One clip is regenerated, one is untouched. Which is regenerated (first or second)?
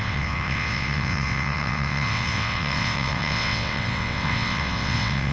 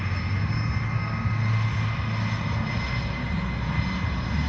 first